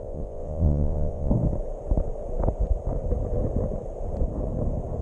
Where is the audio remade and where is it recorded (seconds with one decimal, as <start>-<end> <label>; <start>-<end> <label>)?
0.0-1.3 remade; 1.3-5.0 recorded